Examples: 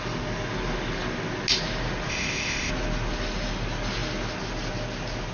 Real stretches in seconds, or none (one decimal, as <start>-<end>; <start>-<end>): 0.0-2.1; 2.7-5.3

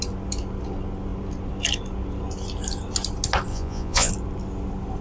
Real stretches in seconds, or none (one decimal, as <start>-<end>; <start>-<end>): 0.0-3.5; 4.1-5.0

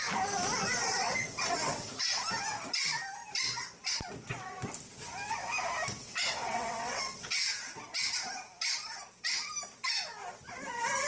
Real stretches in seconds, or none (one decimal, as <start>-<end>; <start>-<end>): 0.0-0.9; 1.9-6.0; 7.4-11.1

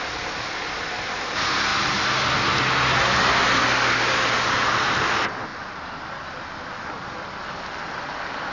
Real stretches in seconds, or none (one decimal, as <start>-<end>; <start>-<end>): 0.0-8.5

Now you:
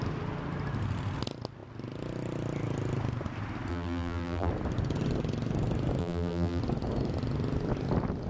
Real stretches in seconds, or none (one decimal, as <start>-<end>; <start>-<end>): 0.0-3.7; 4.5-6.0; 6.6-8.3

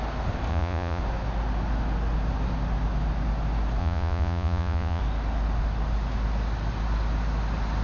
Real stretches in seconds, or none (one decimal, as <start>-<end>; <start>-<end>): 0.0-0.5; 1.0-3.8; 5.0-7.8